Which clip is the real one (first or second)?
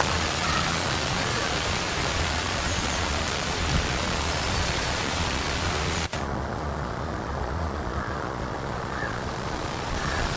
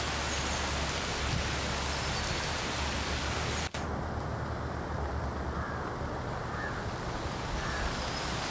second